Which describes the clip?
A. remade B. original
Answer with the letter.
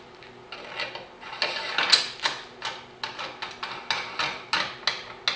B